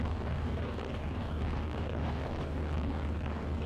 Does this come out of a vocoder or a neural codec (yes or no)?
yes